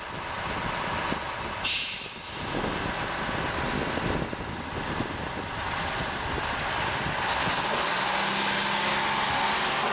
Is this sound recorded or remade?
recorded